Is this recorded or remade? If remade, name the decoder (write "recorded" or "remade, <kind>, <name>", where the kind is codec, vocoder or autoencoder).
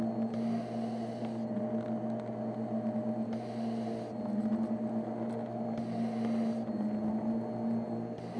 recorded